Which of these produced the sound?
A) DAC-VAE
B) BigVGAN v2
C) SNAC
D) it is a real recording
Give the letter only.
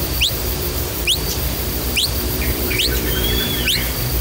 B